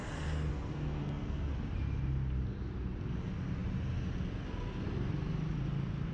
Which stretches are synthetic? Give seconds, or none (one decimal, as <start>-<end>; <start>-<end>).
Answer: 0.5-1.5